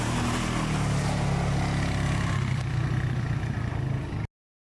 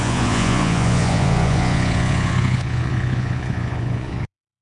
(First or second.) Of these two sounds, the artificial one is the second